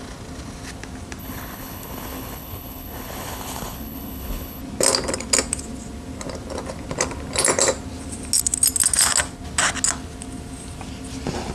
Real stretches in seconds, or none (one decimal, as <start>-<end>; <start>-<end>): 0.0-1.2; 4.6-11.5